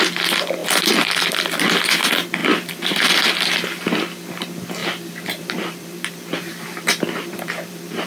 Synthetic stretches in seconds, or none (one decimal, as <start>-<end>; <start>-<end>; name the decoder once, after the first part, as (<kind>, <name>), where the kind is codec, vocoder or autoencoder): 0.6-1.7 (vocoder, BigVGAN v2); 2.4-3.3; 4.8-8.1